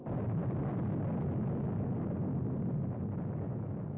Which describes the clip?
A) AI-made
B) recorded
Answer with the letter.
B